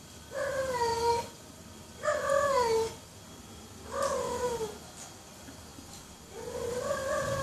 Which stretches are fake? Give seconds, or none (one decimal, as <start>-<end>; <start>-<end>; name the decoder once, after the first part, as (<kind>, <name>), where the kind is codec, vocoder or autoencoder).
0.0-0.9 (vocoder, BigVGAN v2); 5.3-5.7; 6.7-7.4